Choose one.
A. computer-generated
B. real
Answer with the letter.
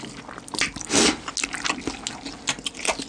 B